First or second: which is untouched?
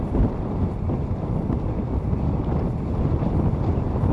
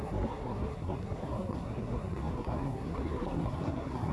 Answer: first